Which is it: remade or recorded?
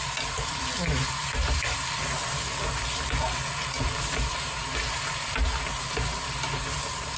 recorded